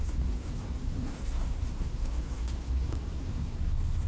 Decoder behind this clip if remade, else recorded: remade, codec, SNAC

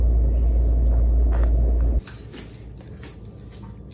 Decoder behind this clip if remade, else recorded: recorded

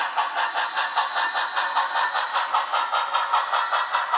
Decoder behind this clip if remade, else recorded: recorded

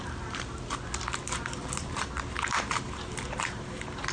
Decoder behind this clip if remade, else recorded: recorded